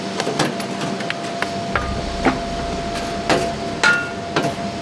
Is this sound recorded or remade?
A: recorded